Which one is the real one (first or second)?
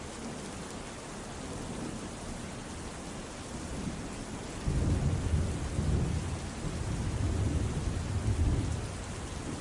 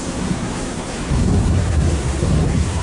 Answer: first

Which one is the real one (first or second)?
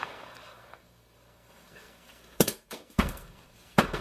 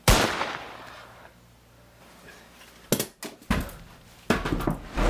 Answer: second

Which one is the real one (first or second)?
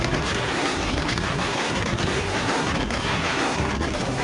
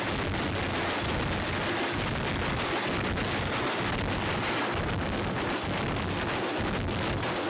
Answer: second